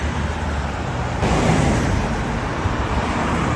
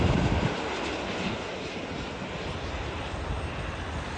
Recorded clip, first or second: second